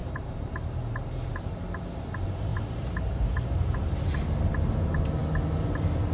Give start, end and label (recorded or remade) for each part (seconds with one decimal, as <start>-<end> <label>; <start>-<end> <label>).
0.0-1.5 remade; 1.5-2.5 recorded; 2.5-3.5 remade; 3.5-6.1 recorded